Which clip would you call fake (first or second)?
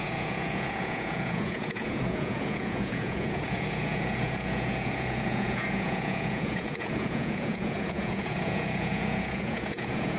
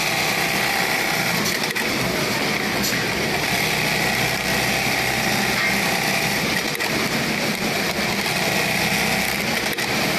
first